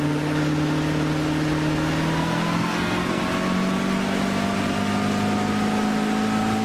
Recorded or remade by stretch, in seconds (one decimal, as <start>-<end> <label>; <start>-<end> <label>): 0.0-2.2 recorded; 2.2-3.2 remade; 3.2-6.6 recorded